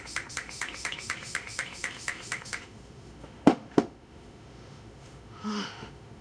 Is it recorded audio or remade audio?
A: remade